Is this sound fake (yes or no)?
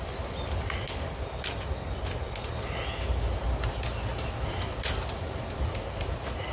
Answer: no